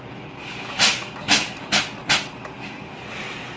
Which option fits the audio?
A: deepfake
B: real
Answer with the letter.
B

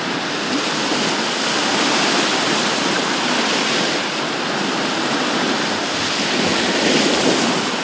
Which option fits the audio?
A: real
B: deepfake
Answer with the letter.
A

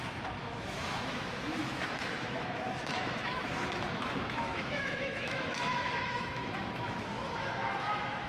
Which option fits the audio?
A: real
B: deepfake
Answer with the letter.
B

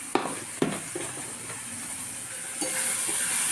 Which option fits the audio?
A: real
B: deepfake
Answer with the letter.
A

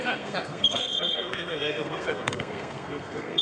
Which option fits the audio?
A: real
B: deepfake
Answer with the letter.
B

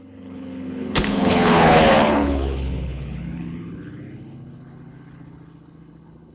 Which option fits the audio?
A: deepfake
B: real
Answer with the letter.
A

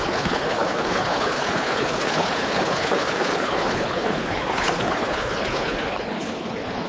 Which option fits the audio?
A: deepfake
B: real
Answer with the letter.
A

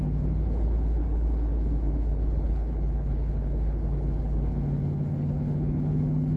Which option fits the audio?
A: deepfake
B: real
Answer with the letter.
A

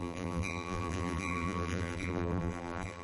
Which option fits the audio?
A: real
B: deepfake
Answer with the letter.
B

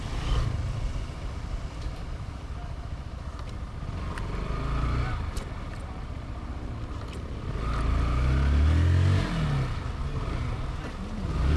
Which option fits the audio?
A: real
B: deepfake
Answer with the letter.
A